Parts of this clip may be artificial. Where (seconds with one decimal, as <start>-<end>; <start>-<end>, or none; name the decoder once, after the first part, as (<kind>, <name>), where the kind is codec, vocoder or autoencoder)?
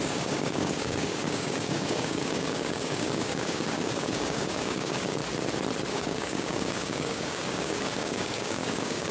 0.0-5.2 (codec, DAC); 5.9-9.1